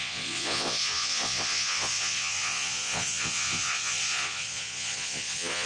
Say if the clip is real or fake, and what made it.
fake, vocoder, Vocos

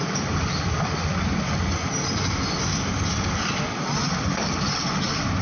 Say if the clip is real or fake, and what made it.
real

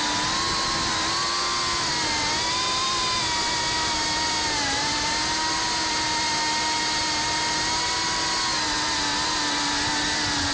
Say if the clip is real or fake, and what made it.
real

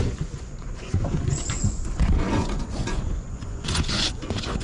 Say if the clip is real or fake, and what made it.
fake, vocoder, Vocos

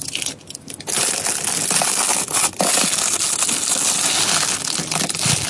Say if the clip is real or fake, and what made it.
real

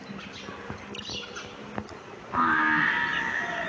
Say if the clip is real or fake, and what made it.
real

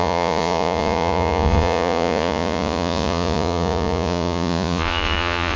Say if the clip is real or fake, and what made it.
fake, vocoder, Vocos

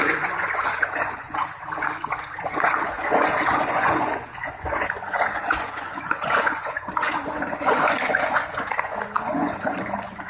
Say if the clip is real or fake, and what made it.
fake, vocoder, Vocos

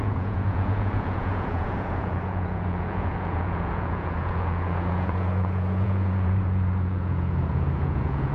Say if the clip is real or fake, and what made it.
fake, vocoder, Vocos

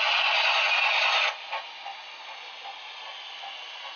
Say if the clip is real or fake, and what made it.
real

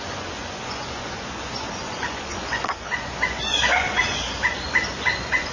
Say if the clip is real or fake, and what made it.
fake, vocoder, Vocos